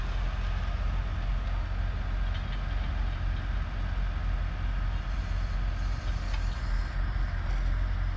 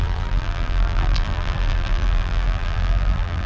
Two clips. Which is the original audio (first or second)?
first